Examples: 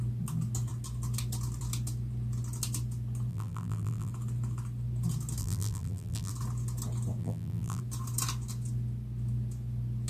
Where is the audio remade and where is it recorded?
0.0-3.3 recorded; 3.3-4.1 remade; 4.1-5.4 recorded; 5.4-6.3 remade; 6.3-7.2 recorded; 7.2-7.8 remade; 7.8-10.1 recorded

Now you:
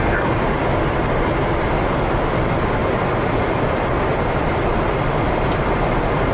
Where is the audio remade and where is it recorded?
0.0-6.3 remade